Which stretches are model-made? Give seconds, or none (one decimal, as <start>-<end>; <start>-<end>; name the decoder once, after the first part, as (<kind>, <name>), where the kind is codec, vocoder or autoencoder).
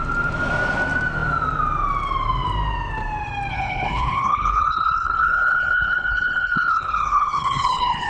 3.5-8.1 (codec, HILCodec)